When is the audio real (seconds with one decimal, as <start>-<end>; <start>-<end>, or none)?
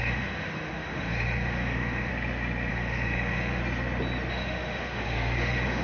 2.1-2.7; 3.6-4.3